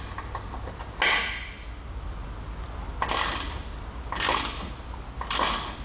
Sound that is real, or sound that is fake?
real